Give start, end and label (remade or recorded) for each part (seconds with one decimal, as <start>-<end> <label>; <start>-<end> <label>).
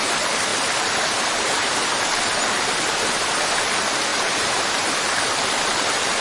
0.0-4.1 recorded; 4.1-4.9 remade; 4.9-6.2 recorded